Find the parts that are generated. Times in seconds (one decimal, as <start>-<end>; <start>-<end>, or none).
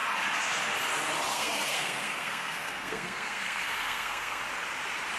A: 1.3-4.4